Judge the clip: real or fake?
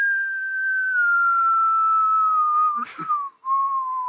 real